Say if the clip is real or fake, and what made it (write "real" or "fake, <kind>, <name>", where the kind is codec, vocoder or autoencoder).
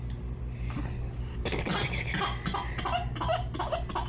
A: real